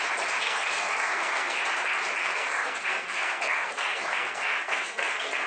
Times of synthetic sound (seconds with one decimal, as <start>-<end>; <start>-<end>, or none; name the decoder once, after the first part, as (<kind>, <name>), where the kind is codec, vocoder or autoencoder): 0.4-1.6 (codec, SNAC); 2.2-5.5